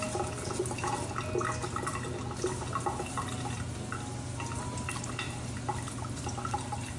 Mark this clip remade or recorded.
recorded